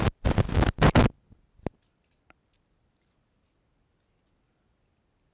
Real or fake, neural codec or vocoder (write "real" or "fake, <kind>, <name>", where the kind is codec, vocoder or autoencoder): real